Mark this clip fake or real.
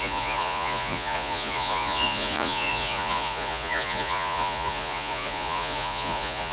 fake